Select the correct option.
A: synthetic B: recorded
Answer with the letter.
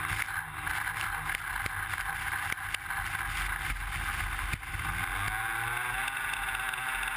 B